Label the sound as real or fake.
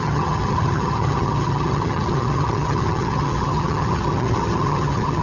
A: fake